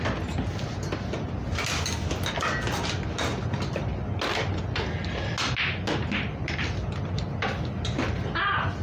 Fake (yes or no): no